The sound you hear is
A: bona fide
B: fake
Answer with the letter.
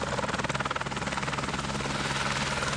A